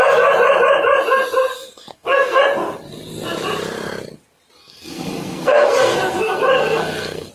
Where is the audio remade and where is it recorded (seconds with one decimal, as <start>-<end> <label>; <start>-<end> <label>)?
0.0-1.5 recorded; 1.5-2.4 remade; 2.4-4.6 recorded; 4.6-7.3 remade